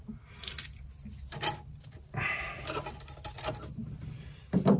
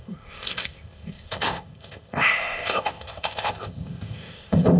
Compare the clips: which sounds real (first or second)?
first